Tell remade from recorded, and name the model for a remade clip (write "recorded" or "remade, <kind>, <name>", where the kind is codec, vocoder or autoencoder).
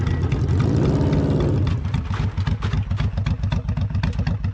recorded